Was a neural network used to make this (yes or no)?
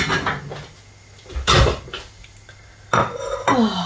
no